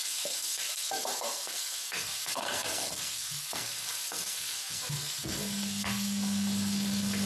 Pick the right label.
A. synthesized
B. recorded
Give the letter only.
A